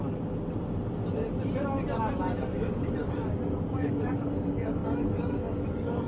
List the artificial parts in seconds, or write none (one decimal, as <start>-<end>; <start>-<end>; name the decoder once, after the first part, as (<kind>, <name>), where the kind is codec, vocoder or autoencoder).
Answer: 2.2-6.1 (codec, DAC)